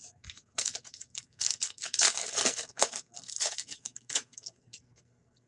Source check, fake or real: fake